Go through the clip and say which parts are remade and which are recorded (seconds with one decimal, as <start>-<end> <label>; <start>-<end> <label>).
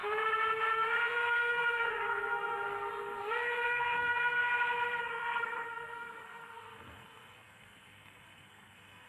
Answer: 0.0-1.0 recorded; 1.0-4.4 remade; 4.4-5.0 recorded; 5.0-9.1 remade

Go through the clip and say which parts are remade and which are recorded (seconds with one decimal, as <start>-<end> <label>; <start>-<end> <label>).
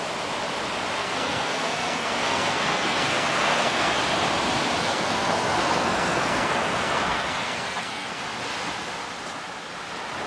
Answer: 0.0-1.0 recorded; 1.0-4.0 remade; 4.0-4.8 recorded; 4.8-8.2 remade; 8.2-10.3 recorded